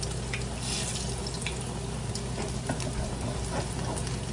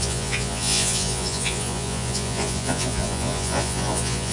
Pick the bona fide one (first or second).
first